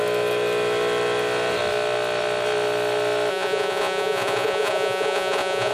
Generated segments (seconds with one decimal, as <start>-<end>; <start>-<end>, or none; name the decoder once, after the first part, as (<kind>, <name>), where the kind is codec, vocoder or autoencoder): 3.3-5.7 (vocoder, Vocos)